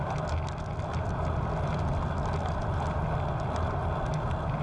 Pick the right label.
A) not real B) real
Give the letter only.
B